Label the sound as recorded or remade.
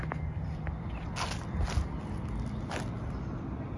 recorded